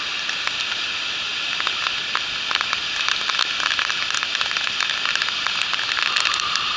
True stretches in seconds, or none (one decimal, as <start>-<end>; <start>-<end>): 0.0-6.8